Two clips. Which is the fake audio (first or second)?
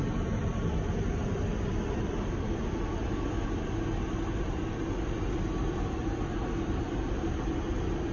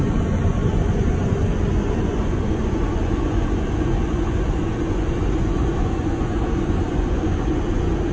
second